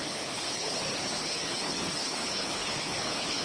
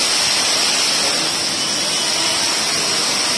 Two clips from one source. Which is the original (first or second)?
second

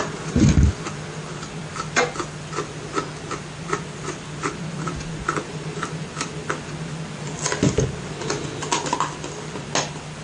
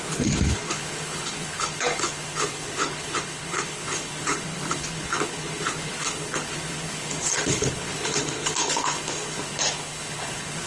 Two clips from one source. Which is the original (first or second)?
first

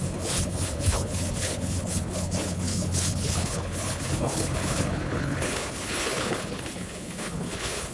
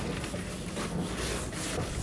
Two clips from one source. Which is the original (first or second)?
second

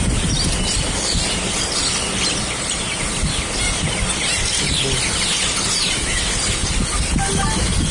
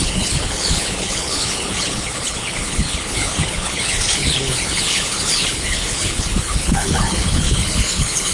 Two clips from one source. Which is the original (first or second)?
first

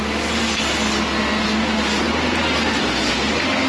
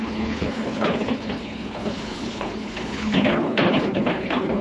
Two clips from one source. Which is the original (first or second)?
first